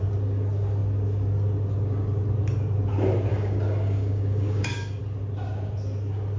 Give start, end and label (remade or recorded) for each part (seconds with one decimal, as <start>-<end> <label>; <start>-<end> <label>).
0.0-3.3 recorded; 3.3-5.0 remade; 5.0-6.4 recorded